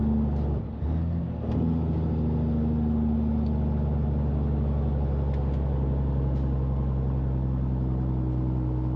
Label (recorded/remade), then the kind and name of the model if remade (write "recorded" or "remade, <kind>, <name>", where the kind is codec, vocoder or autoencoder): recorded